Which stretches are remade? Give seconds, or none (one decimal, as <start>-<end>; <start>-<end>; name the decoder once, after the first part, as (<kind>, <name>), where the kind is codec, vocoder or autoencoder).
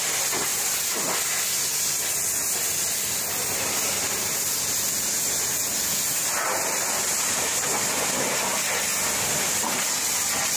0.5-1.4 (vocoder, BigVGAN v2); 3.8-4.4; 5.7-6.8